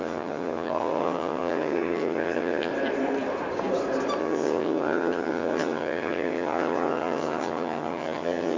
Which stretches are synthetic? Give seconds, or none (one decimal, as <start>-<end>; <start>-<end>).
0.0-2.7; 4.2-8.6

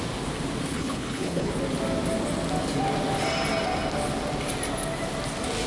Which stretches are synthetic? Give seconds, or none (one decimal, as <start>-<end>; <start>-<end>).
0.7-1.5

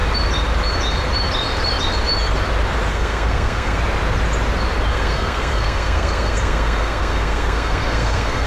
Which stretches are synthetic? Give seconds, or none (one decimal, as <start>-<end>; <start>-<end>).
2.9-3.8; 4.9-8.5

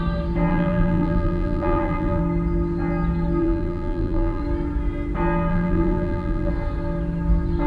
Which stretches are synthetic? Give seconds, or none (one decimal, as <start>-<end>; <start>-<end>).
0.5-2.2; 3.4-4.4; 5.5-6.5

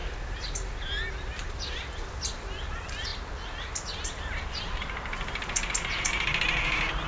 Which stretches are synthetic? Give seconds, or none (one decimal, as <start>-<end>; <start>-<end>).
none

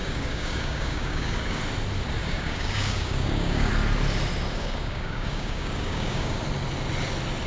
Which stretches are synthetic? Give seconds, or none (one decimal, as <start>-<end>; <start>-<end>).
0.0-1.6; 2.2-3.7; 4.5-6.4

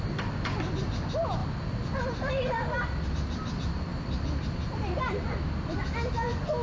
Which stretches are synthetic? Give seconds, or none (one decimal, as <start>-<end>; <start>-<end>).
none